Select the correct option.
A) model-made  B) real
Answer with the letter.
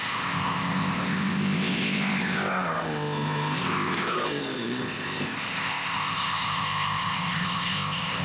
A